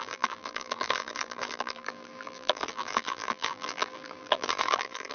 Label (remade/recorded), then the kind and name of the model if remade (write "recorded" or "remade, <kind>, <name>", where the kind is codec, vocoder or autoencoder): remade, vocoder, BigVGAN v2